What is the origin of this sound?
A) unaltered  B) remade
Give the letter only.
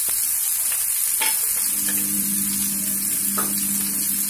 A